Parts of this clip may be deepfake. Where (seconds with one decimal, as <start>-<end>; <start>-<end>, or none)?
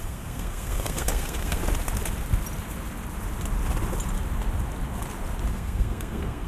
0.0-1.6; 5.5-6.5